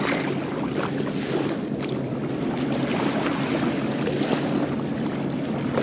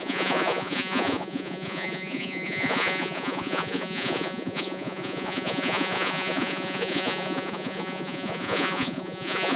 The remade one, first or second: second